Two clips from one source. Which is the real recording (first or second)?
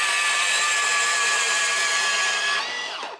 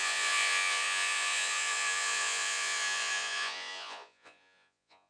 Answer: first